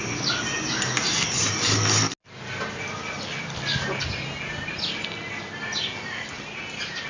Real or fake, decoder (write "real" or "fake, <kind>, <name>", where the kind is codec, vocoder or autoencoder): real